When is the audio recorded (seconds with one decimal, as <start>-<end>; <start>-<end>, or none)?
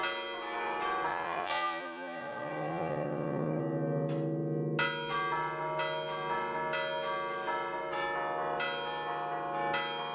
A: 0.0-1.1; 3.6-10.1